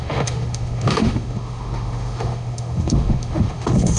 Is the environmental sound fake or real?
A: fake